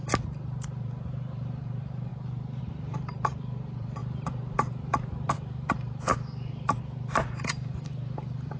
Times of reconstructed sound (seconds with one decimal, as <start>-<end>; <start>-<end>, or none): 0.0-2.1; 2.6-8.6